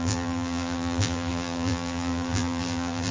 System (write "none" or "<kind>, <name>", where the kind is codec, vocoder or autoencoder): vocoder, BigVGAN v2